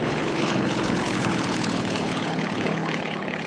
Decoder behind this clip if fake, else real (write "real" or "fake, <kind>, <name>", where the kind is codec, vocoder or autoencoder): fake, codec, HILCodec